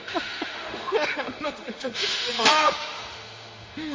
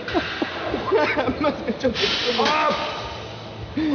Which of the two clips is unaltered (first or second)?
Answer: second